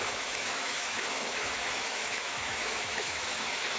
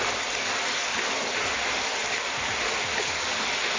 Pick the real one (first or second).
second